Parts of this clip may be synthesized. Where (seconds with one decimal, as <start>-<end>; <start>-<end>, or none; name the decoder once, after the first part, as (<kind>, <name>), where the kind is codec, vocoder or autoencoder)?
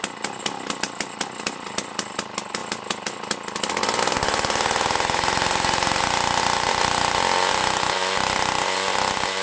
none